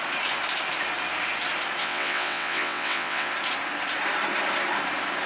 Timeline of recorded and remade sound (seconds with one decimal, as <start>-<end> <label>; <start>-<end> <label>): 0.0-1.8 recorded; 1.8-3.3 remade; 3.3-5.3 recorded